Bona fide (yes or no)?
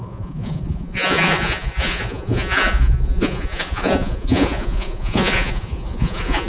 no